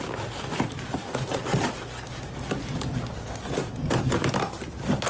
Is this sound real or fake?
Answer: real